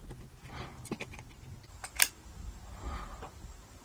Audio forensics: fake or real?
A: real